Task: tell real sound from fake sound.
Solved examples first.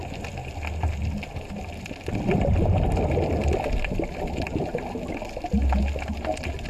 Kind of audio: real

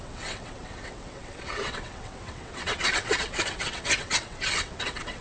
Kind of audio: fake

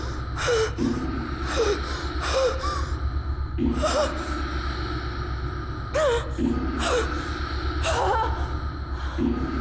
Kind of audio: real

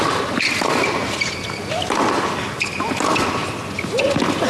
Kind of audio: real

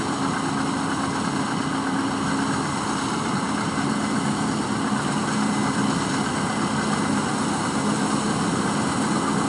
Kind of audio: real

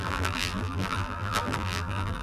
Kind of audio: fake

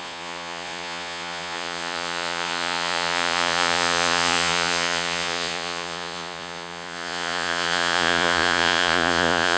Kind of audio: fake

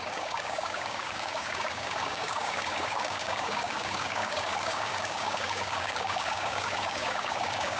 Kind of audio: fake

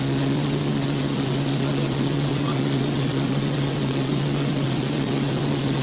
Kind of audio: fake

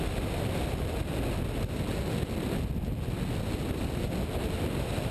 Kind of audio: real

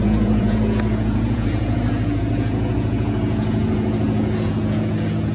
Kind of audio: fake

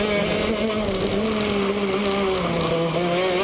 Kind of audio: real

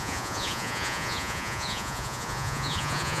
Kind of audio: fake